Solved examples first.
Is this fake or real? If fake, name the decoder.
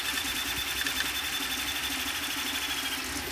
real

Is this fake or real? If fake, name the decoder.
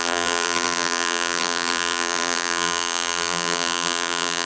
fake, vocoder, BigVGAN v2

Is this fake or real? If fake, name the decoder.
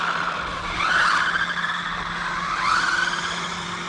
real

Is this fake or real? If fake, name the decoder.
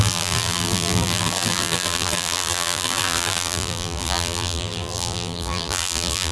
fake, vocoder, BigVGAN v2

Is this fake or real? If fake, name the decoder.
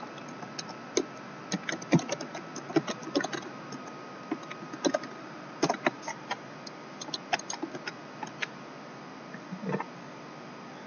real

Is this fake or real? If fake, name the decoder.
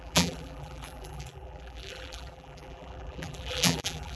fake, vocoder, BigVGAN v2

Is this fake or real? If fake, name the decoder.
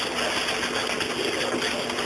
real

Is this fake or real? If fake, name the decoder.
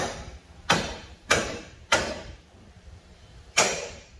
fake, vocoder, BigVGAN v2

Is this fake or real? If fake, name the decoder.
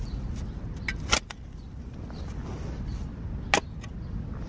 real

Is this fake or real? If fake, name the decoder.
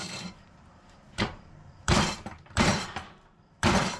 fake, vocoder, BigVGAN v2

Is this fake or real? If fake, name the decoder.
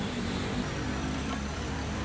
fake, vocoder, BigVGAN v2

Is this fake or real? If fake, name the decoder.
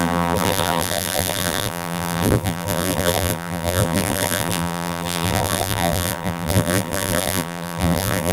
fake, vocoder, BigVGAN v2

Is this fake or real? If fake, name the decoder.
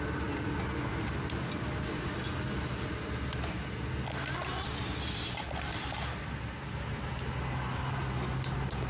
real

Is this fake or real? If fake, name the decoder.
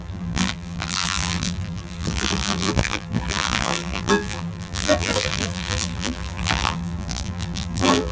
fake, vocoder, BigVGAN v2